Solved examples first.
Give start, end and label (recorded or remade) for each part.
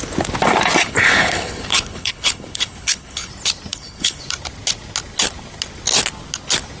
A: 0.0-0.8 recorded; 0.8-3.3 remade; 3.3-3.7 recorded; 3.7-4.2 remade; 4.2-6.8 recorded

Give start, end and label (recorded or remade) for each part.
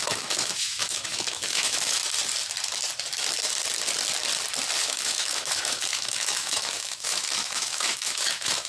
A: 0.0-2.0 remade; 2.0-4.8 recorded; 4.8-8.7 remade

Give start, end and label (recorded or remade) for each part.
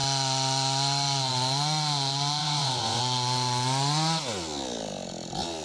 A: 0.0-2.4 recorded; 2.4-3.0 remade; 3.0-5.6 recorded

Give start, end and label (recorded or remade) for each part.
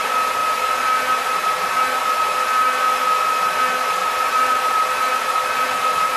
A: 0.0-4.0 recorded; 4.0-5.1 remade; 5.1-6.2 recorded